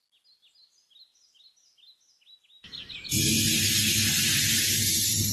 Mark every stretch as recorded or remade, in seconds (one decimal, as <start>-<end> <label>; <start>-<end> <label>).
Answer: 0.0-5.3 recorded